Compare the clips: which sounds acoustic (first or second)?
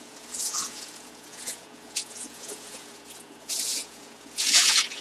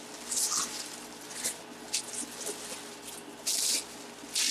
second